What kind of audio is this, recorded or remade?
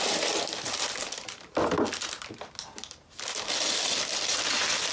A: recorded